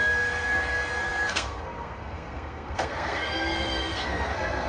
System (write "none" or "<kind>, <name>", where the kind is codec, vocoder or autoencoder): codec, SNAC